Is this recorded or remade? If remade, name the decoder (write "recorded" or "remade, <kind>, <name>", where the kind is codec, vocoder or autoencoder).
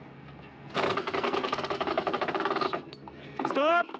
remade, codec, SNAC